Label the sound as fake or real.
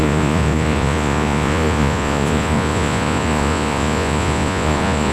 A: fake